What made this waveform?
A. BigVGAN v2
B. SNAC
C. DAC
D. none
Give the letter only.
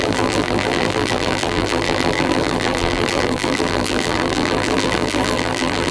A